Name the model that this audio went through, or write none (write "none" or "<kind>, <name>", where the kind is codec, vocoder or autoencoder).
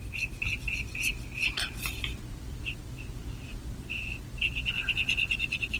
vocoder, BigVGAN v2